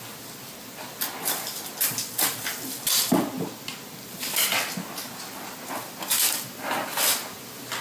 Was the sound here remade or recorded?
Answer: recorded